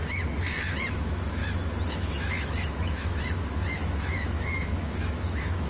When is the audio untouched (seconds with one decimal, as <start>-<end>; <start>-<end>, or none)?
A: 0.0-0.9; 1.4-1.9